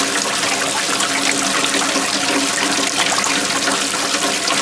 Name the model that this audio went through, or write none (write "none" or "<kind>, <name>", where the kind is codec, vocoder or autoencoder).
none